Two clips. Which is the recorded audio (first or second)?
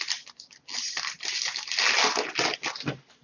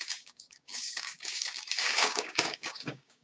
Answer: first